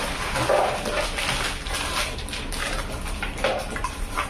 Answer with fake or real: real